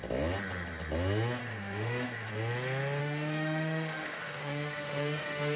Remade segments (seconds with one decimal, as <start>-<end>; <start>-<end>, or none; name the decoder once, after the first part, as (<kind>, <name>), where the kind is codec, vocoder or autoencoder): 1.4-2.3 (autoencoder, DAC-VAE); 3.0-5.6